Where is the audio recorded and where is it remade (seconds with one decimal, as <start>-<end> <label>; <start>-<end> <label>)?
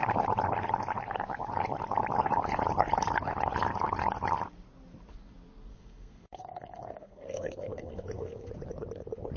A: 0.0-5.7 recorded; 5.7-8.5 remade; 8.5-9.4 recorded